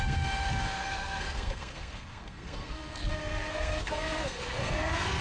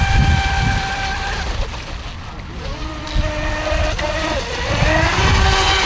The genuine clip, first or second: second